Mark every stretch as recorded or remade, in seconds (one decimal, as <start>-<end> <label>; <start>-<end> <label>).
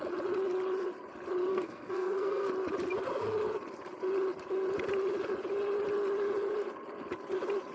0.0-1.5 recorded; 1.5-2.5 remade; 2.5-7.7 recorded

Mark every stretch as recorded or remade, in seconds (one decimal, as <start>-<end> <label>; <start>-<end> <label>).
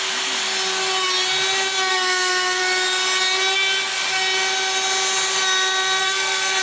0.0-1.9 recorded; 1.9-2.6 remade; 2.6-6.0 recorded; 6.0-6.6 remade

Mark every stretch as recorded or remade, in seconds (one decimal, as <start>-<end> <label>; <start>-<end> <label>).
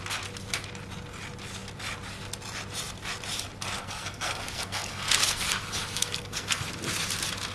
0.0-3.8 recorded; 3.8-6.6 remade; 6.6-7.5 recorded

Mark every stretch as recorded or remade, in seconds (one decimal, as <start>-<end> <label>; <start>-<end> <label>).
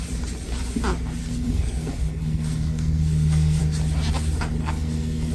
0.0-1.2 recorded; 1.2-3.6 remade; 3.6-4.6 recorded; 4.6-5.3 remade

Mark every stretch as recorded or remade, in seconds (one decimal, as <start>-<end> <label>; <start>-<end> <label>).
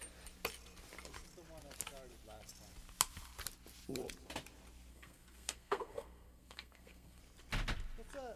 0.0-4.9 recorded; 4.9-7.2 remade; 7.2-8.4 recorded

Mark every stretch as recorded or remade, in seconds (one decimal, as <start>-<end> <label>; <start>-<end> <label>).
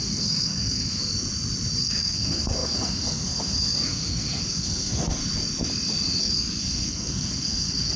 0.0-1.0 remade; 1.0-1.8 recorded; 1.8-5.2 remade; 5.2-6.2 recorded; 6.2-8.0 remade